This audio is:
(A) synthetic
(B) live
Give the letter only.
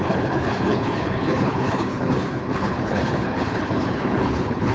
A